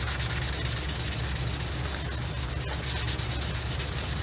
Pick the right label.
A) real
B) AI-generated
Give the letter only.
A